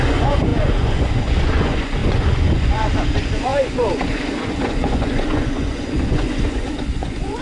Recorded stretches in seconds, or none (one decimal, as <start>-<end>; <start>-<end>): none